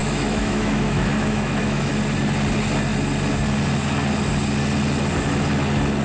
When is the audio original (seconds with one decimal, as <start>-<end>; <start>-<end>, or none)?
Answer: 1.9-6.0